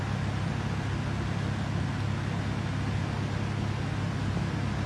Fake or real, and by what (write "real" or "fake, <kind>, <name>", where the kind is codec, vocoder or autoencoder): real